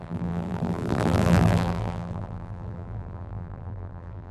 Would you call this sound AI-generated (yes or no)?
yes